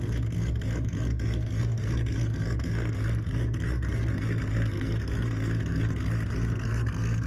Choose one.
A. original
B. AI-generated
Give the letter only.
B